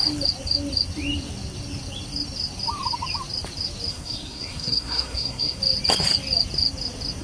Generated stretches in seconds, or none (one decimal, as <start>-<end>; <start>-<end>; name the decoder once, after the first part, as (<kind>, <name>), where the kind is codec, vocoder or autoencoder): 3.9-5.6 (codec, SNAC)

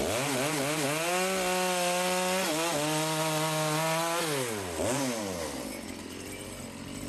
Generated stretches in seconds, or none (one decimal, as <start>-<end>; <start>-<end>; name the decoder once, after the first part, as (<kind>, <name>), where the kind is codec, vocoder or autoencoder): none